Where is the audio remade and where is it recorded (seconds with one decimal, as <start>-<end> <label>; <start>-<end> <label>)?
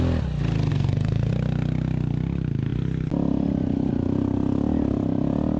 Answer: 0.0-0.7 recorded; 0.7-1.3 remade; 1.3-5.6 recorded